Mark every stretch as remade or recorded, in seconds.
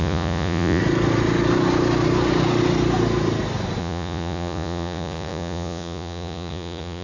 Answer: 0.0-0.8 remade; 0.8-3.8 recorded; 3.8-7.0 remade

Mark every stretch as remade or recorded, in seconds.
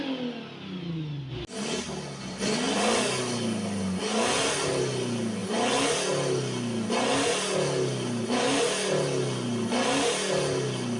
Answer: 0.0-11.0 recorded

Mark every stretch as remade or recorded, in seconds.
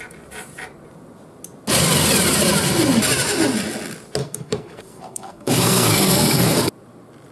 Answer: 0.0-4.2 recorded; 4.2-6.7 remade; 6.7-7.3 recorded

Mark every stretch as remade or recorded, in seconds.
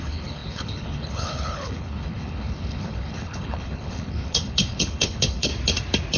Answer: 0.0-5.5 remade; 5.5-6.2 recorded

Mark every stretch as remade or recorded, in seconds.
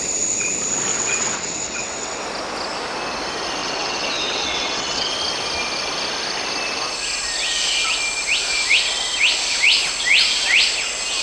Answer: 0.0-0.9 recorded; 0.9-2.2 remade; 2.2-3.6 recorded; 3.6-5.1 remade; 5.1-11.2 recorded